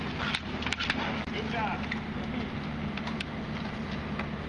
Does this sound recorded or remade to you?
recorded